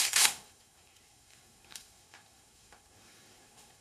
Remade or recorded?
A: remade